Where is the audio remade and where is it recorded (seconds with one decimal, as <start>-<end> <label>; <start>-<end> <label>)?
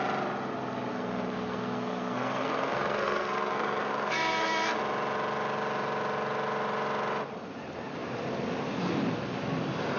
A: 0.0-0.9 recorded; 0.9-4.8 remade; 4.8-10.0 recorded